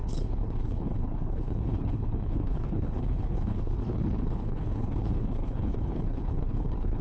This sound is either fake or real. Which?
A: fake